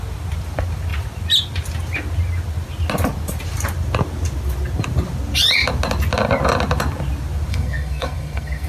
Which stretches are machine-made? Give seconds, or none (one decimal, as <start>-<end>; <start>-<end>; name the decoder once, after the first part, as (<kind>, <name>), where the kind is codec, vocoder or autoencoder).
7.5-8.7 (codec, SNAC)